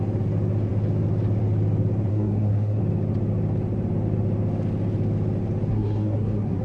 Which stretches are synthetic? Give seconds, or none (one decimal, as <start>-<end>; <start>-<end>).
2.1-2.8; 5.7-6.6